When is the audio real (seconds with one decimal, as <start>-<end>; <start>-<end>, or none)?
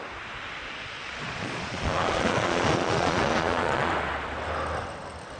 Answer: 0.0-0.7; 3.9-5.4